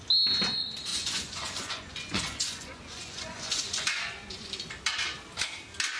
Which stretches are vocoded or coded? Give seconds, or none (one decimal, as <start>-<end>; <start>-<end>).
0.9-4.5